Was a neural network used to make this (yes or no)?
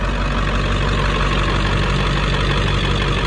no